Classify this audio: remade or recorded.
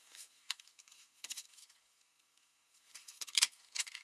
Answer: remade